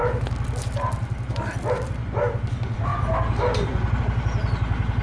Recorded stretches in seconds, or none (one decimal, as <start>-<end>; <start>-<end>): 0.0-5.0